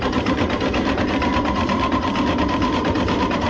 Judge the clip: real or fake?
real